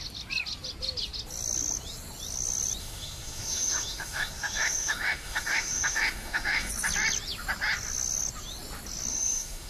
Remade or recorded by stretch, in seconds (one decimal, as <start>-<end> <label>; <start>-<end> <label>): 0.0-2.8 recorded; 2.8-6.7 remade; 6.7-9.1 recorded; 9.1-9.7 remade